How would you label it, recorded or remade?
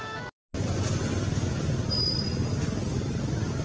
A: recorded